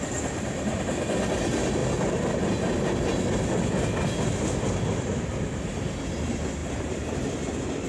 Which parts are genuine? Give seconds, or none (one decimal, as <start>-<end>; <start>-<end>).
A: 0.0-7.9